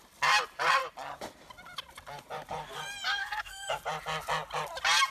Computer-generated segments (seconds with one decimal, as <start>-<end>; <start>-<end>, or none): 3.1-3.7